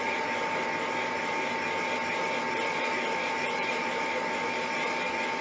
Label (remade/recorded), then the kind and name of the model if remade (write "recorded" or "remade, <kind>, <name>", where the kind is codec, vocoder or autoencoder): recorded